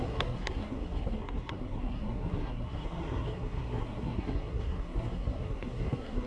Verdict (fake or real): fake